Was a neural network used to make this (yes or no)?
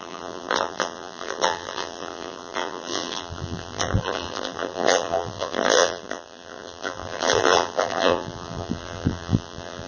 yes